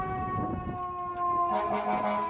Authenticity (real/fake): real